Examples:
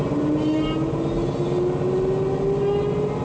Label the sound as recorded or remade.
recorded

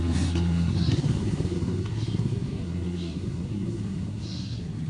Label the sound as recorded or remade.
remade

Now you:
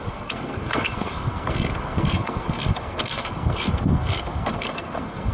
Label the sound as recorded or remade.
remade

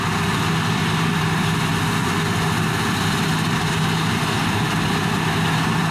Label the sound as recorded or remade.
recorded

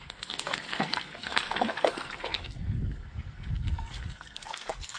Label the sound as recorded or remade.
remade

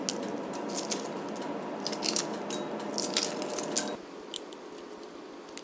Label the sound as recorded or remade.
recorded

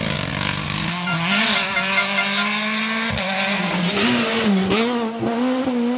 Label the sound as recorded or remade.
recorded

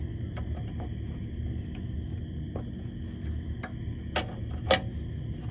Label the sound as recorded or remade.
recorded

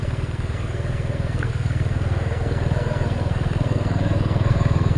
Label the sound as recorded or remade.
remade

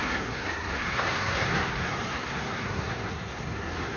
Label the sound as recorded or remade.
remade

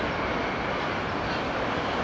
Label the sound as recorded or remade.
recorded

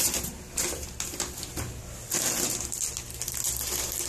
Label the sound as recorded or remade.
recorded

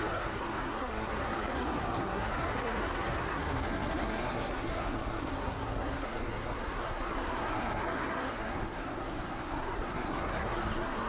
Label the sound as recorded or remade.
remade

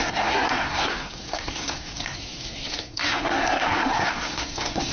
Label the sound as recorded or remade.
remade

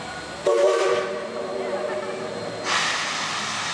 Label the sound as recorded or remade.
recorded